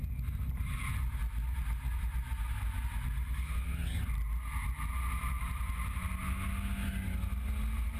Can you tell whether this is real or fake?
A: real